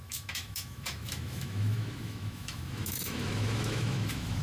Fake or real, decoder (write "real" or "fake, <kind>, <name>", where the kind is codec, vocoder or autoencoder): fake, autoencoder, DAC-VAE